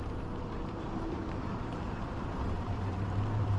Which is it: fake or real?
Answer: fake